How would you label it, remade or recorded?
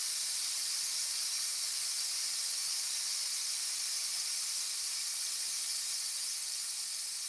recorded